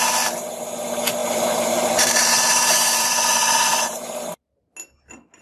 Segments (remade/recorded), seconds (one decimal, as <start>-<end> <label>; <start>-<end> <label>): 0.0-1.2 recorded; 1.2-4.4 remade; 4.4-5.4 recorded